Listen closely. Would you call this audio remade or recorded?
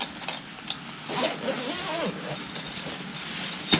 recorded